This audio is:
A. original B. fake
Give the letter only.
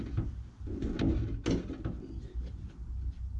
A